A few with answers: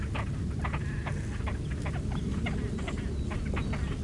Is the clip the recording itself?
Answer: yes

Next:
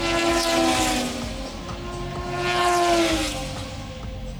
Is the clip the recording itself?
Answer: yes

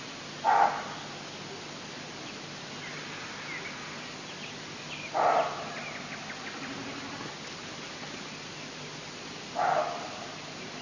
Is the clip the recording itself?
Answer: yes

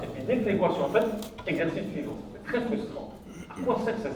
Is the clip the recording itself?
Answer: yes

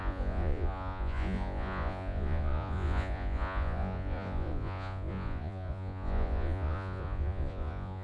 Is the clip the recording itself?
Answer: no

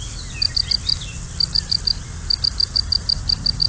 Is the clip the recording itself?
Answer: yes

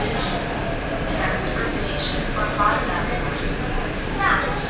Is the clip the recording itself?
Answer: yes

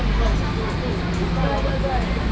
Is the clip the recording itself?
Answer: yes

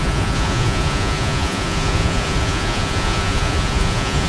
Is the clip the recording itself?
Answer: no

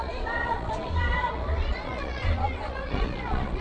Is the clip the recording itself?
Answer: no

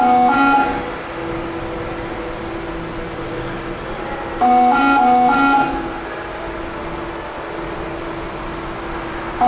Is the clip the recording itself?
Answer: yes